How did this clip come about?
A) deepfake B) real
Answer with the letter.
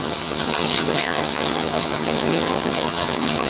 A